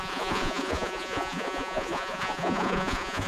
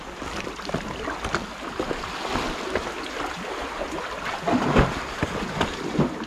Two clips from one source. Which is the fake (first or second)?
first